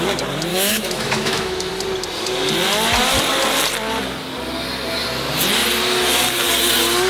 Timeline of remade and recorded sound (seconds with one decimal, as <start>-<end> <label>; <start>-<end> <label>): 0.0-0.5 recorded; 0.5-1.7 remade; 1.7-7.1 recorded